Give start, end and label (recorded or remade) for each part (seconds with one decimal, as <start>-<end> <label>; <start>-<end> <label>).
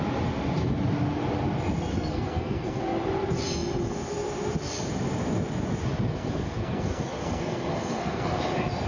0.0-1.9 recorded; 1.9-2.8 remade; 2.8-6.1 recorded; 6.1-8.4 remade; 8.4-8.9 recorded